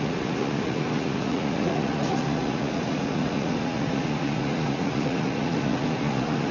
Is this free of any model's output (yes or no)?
no